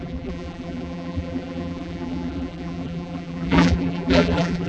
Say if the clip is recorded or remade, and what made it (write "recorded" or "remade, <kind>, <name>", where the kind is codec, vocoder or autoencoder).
remade, vocoder, BigVGAN v2